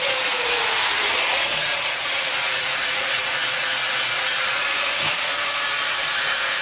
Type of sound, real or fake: fake